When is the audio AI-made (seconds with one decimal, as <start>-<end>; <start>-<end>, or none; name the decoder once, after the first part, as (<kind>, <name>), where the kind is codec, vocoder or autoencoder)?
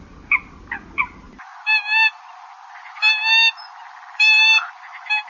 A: none